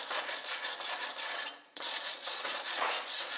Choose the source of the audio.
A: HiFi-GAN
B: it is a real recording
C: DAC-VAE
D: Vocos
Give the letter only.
D